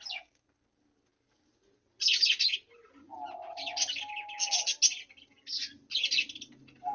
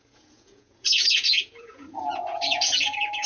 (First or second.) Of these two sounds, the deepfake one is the second